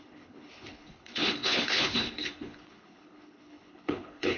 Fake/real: fake